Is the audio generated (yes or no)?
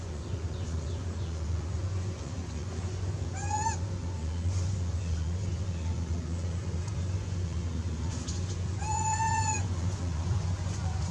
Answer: yes